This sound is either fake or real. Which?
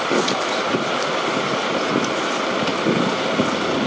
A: real